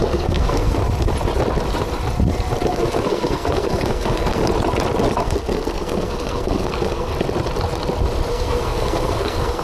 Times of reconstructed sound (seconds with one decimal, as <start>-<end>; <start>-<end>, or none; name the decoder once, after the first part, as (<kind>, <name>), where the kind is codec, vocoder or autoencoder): 0.0-0.8 (codec, SNAC); 2.7-4.4; 5.2-7.1; 8.3-9.6